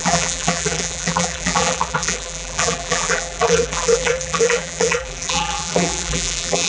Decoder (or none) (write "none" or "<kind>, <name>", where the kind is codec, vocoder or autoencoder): vocoder, BigVGAN v2